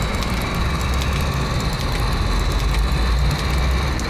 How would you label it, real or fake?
real